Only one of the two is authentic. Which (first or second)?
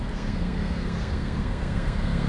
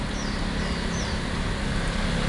second